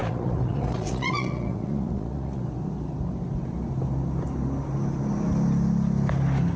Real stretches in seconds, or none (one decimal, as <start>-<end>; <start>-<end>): 2.4-6.6